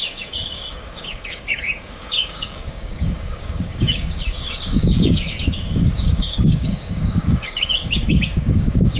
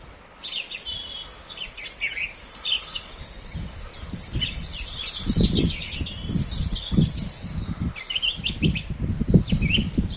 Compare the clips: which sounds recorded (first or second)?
second